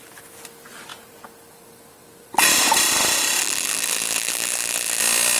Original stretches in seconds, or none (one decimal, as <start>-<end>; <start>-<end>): 0.0-3.4; 5.0-5.4